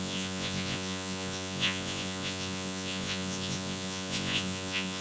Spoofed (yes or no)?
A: yes